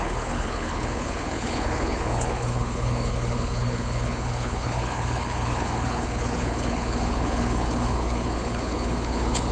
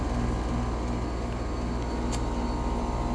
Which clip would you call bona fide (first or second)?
second